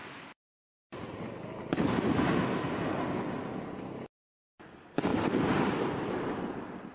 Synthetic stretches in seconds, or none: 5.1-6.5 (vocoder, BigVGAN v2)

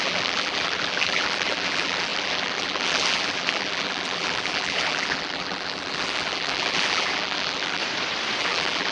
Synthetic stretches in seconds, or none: 0.0-7.8 (vocoder, BigVGAN v2); 8.4-8.9

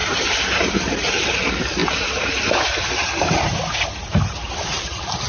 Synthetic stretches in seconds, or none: 0.0-1.1 (vocoder, BigVGAN v2); 1.8-4.8

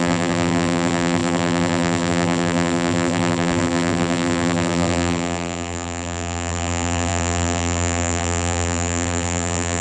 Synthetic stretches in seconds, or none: 0.0-9.8 (vocoder, BigVGAN v2)